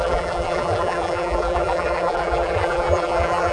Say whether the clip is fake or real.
fake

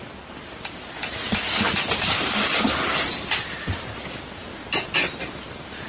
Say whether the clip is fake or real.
fake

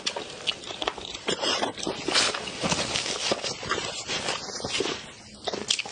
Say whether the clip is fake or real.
real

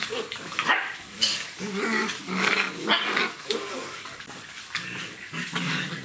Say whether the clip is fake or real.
fake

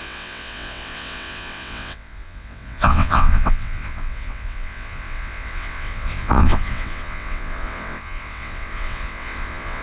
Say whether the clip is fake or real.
fake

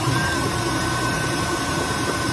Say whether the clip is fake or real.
fake